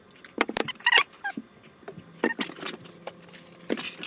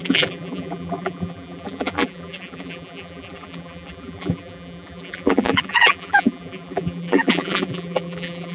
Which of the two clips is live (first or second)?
first